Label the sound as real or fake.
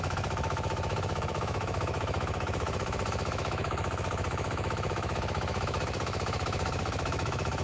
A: fake